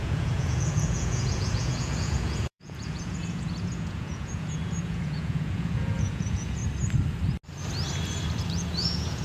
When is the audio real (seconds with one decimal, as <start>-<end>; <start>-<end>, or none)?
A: 6.6-8.5